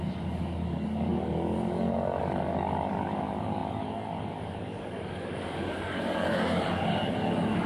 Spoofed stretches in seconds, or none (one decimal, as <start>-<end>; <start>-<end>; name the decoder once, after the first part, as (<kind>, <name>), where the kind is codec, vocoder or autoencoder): 0.0-7.7 (codec, DAC)